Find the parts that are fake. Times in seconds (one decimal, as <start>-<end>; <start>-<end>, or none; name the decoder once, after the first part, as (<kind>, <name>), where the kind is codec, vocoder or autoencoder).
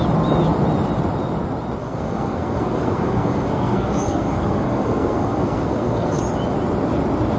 1.8-6.2 (codec, SNAC)